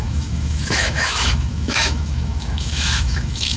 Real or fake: fake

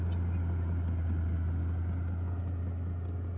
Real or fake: real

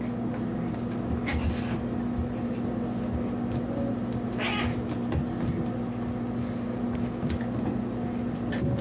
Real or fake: real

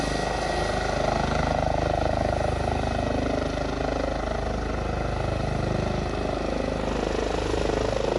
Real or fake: real